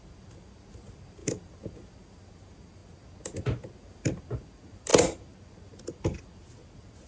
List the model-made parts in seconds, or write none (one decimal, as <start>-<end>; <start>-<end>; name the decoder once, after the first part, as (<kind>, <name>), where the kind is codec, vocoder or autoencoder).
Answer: none